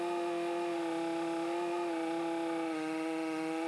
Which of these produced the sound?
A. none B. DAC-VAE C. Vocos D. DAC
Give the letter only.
B